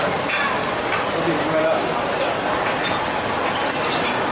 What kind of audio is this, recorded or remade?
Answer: recorded